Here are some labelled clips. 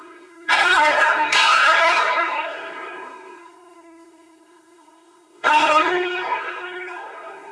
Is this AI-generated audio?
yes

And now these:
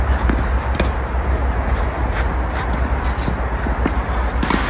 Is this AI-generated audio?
no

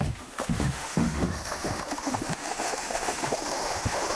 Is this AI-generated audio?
yes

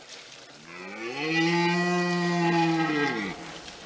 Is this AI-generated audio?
no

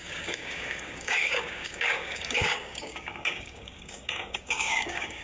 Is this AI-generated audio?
yes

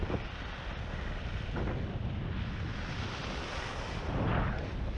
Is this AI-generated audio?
no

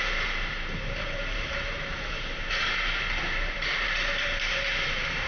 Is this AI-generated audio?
yes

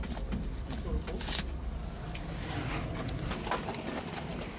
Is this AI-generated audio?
no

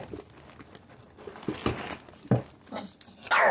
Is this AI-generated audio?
no